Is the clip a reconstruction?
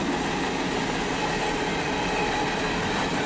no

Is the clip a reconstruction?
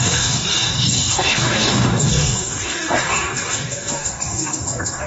yes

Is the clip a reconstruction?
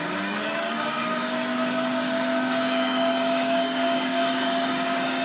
yes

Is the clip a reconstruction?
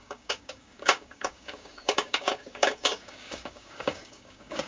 yes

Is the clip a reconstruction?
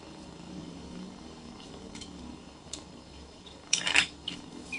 yes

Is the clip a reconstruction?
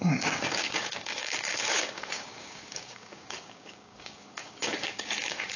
yes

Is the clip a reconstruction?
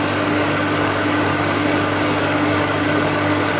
yes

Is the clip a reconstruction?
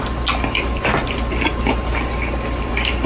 no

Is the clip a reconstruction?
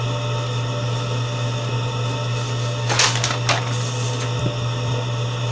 no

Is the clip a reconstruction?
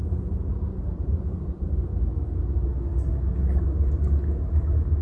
no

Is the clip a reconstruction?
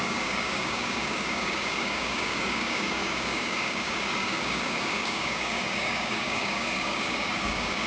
yes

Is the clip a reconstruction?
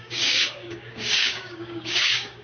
yes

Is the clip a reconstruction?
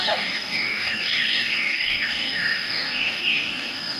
yes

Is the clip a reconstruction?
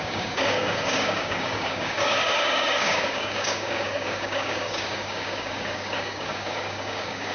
yes